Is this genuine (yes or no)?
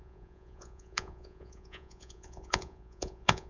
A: no